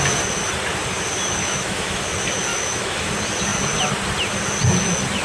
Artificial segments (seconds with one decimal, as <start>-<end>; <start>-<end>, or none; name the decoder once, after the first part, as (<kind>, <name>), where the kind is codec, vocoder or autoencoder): 1.4-2.0 (autoencoder, DAC-VAE); 2.5-3.1